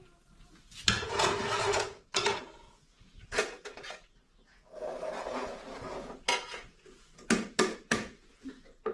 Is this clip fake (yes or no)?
yes